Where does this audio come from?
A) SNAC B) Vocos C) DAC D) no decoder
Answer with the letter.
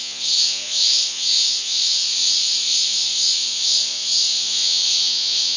B